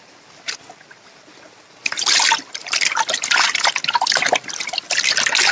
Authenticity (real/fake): real